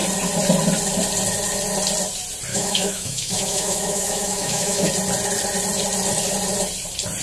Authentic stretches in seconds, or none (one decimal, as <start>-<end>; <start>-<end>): 0.0-2.5; 4.9-7.2